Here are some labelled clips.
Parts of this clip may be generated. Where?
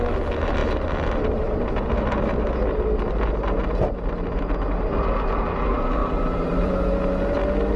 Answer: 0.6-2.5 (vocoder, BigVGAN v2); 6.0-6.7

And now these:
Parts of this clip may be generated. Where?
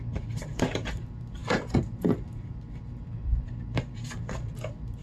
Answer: 0.0-5.0 (vocoder, BigVGAN v2)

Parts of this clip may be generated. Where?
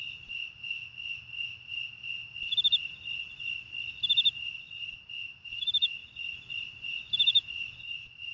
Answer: 0.0-0.8 (vocoder, BigVGAN v2); 4.3-6.0; 6.6-8.3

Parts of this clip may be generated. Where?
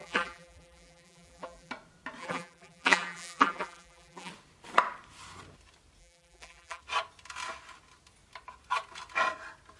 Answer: 0.0-1.7 (vocoder, BigVGAN v2); 2.2-4.3; 6.0-6.8